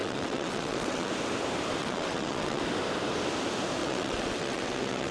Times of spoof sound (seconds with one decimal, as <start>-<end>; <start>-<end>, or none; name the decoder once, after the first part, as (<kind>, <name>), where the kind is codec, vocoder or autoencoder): 0.0-1.1 (vocoder, WaveNeXt); 1.8-2.6; 3.8-5.1